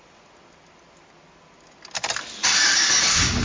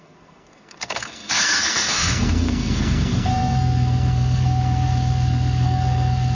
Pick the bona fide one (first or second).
first